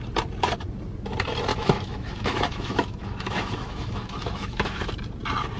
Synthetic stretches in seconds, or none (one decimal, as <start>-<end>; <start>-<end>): 1.5-4.9